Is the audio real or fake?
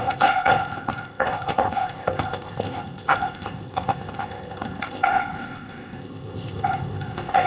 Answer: fake